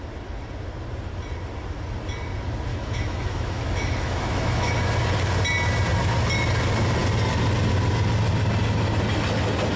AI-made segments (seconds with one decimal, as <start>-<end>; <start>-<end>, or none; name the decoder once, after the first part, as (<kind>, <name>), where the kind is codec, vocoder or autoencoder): 2.7-4.7 (autoencoder, DAC-VAE)